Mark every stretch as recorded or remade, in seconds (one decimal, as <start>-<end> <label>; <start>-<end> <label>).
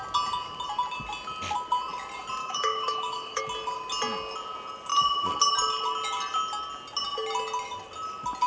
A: 0.0-2.4 recorded; 2.4-3.4 remade; 3.4-8.5 recorded